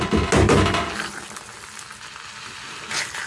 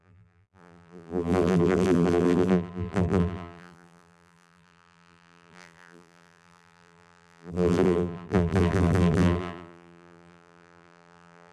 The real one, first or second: first